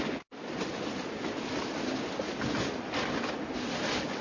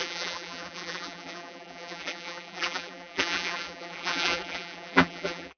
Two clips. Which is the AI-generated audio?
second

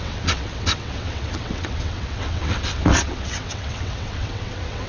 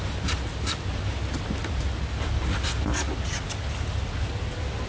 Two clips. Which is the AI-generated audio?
first